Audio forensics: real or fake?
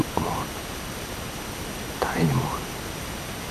real